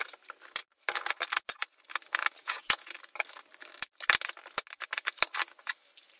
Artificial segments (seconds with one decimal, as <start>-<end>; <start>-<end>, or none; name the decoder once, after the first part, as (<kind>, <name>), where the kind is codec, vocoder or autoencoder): 2.4-2.9 (vocoder, Vocos)